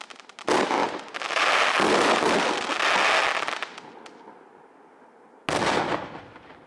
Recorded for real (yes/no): yes